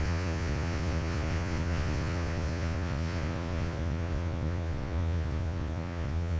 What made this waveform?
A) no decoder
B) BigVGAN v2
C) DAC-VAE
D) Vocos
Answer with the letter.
D